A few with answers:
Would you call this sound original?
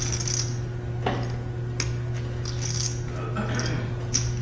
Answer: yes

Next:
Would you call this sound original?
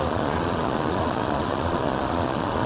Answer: no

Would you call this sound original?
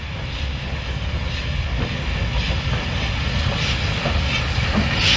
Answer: yes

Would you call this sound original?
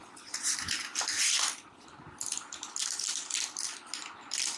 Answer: yes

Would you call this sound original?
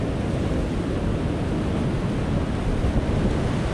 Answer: yes